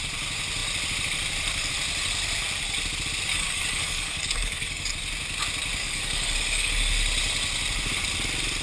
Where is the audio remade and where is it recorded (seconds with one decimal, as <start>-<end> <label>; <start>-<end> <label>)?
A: 0.0-3.3 recorded; 3.3-4.9 remade; 4.9-5.8 recorded; 5.8-6.7 remade; 6.7-8.6 recorded